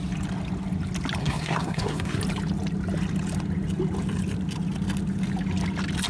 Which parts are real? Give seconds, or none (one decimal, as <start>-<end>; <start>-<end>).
0.0-1.2; 2.2-6.1